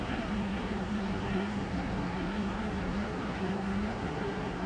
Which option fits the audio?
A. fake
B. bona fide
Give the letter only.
A